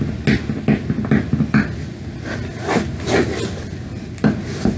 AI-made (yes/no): no